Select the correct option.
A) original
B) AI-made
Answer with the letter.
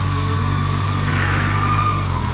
B